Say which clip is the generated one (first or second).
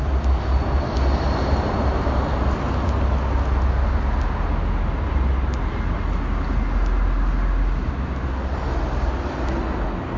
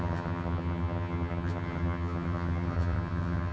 second